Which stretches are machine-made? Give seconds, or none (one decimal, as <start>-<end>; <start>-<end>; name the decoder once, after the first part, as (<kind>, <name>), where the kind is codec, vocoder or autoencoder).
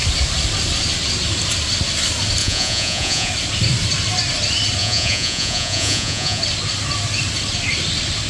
2.4-3.3 (vocoder, Vocos); 4.8-6.4